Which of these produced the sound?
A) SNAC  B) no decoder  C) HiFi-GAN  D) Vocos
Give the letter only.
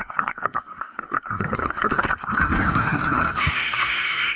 A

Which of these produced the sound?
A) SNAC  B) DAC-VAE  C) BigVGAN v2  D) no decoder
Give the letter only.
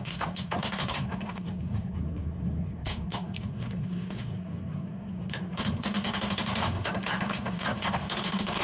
A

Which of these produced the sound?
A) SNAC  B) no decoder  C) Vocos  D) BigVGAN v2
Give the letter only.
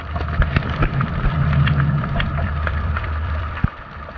D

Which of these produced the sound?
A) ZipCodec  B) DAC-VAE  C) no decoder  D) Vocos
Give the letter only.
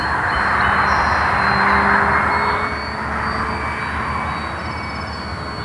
C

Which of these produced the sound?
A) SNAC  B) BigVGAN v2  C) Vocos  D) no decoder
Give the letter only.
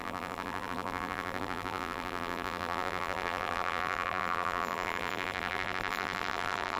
B